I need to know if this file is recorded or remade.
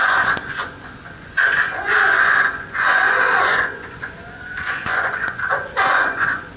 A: remade